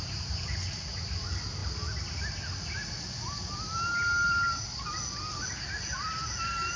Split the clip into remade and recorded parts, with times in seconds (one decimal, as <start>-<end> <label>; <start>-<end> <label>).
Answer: 0.0-6.8 recorded